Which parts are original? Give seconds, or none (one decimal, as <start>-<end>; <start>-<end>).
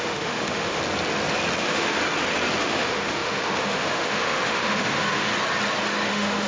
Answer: 0.8-1.6; 2.0-2.6; 5.3-6.1